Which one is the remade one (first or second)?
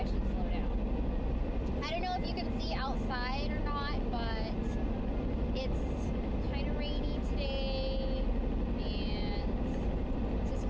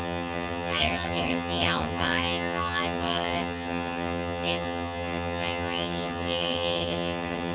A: second